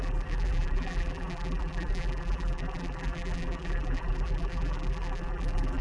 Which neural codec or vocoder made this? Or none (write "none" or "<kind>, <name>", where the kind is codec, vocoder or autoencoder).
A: vocoder, BigVGAN v2